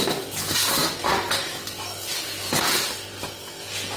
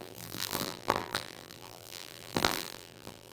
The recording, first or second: first